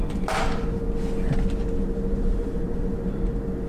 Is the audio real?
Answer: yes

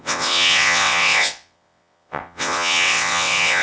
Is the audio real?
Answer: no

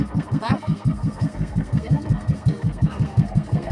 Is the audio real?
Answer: no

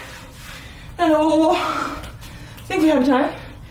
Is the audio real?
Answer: yes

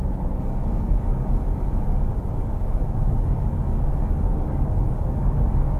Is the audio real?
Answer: no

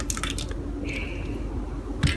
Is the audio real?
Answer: yes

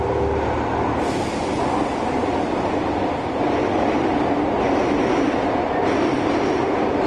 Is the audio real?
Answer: yes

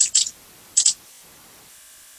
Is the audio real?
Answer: no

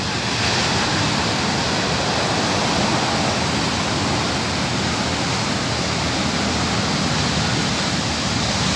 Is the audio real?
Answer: yes